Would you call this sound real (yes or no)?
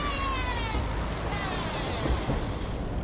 yes